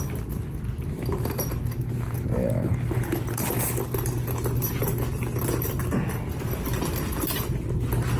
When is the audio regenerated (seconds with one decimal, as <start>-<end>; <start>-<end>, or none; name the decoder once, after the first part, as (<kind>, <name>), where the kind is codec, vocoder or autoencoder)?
none

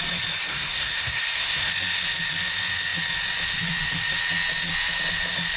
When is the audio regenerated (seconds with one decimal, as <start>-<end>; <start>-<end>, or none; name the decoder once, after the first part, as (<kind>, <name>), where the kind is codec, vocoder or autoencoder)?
0.5-1.7 (codec, SNAC)